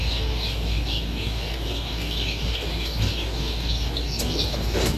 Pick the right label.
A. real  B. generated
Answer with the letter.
B